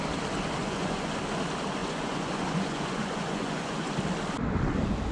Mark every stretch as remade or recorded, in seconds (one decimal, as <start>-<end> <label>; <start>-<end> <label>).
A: 0.0-0.6 recorded; 0.6-1.2 remade; 1.2-1.8 recorded; 1.8-3.9 remade; 3.9-5.1 recorded